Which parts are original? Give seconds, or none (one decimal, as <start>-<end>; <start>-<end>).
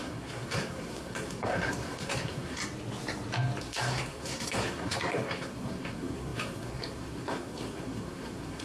2.6-3.6